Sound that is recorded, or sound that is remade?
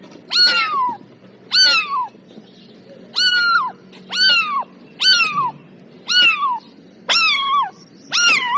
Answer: recorded